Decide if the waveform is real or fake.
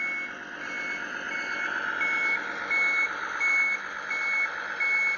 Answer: real